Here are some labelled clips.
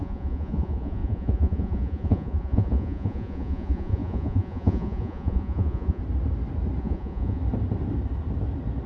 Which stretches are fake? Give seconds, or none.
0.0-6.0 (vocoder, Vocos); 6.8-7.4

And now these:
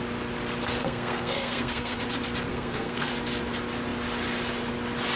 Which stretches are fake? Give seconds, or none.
0.8-2.0 (codec, SNAC); 2.5-3.1

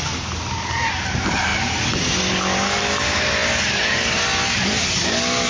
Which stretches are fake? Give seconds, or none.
none

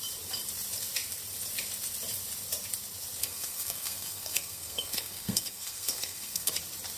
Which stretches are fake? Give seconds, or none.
3.2-6.5 (codec, SNAC)

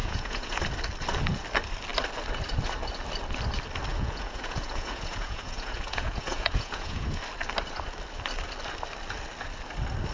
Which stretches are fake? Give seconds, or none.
0.0-0.6 (vocoder, Vocos); 3.9-7.2

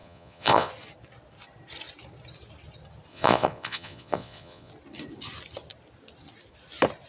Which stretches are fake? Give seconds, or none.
0.0-0.7 (vocoder, Vocos); 3.1-4.7